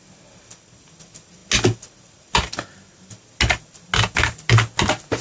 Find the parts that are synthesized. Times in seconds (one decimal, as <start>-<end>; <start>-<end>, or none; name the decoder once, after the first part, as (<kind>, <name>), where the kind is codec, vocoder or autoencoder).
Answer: none